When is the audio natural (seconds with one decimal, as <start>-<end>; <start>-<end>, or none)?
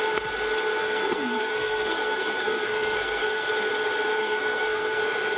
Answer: 0.0-0.8; 3.5-4.2; 5.0-5.4